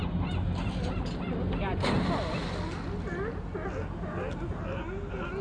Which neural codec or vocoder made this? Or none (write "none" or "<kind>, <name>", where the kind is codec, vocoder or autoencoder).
none